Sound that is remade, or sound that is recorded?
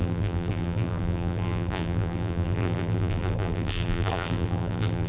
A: remade